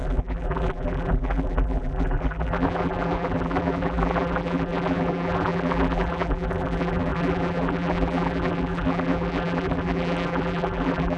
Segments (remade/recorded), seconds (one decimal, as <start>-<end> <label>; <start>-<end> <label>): 0.0-11.2 remade